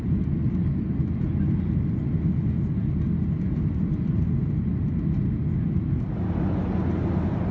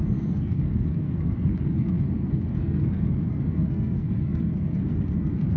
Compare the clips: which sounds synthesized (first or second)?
second